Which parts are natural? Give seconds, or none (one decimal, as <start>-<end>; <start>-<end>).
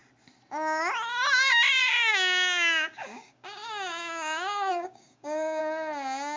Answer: 0.0-1.8; 5.6-6.4